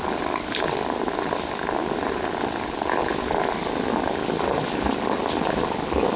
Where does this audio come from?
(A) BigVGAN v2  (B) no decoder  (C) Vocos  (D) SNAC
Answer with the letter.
B